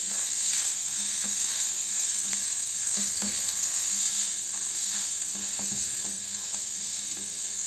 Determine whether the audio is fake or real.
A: fake